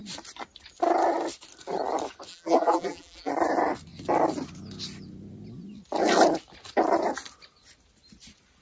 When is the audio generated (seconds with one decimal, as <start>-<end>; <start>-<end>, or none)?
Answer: 2.3-3.3